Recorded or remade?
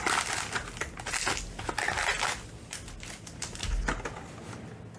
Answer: recorded